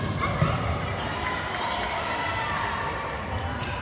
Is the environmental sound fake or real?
real